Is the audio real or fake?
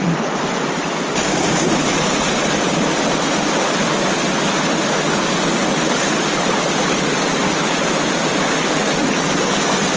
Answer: real